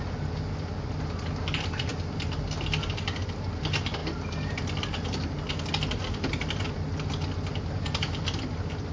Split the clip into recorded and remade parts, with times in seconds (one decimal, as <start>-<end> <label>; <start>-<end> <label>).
0.0-8.9 recorded